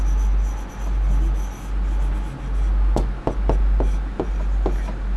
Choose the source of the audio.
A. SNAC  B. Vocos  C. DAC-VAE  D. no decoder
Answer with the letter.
D